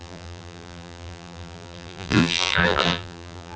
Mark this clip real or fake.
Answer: fake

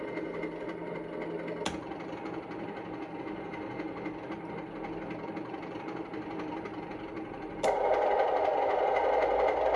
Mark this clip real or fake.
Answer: real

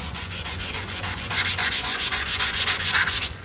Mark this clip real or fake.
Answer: fake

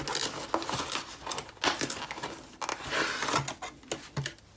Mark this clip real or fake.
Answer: real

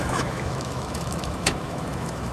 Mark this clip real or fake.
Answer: fake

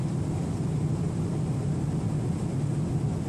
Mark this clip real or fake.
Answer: real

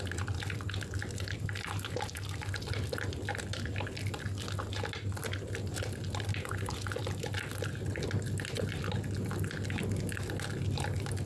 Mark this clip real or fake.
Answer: real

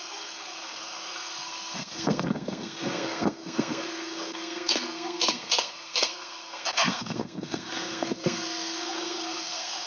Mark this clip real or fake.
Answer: fake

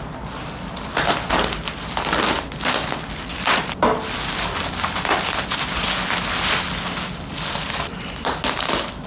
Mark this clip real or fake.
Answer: real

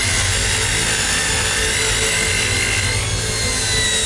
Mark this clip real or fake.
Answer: real